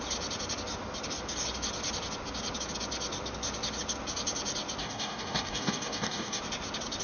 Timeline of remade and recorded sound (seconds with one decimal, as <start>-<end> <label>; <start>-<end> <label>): 0.0-4.8 recorded; 4.8-6.4 remade; 6.4-7.0 recorded